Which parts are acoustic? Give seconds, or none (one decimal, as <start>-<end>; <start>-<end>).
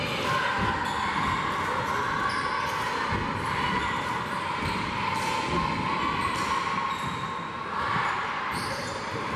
0.0-6.8; 8.9-9.4